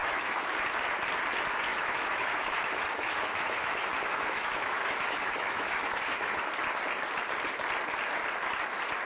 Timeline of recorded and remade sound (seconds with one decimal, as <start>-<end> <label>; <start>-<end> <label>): 0.0-0.5 remade; 0.5-1.7 recorded; 1.7-6.4 remade; 6.4-9.0 recorded